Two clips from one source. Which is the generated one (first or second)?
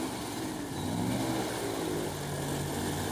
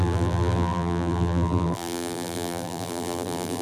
second